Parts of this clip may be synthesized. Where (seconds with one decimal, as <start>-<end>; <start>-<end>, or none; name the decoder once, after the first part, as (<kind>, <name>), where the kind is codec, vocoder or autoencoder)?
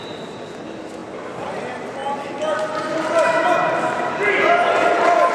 none